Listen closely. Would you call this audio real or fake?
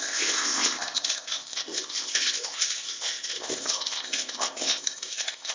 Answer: fake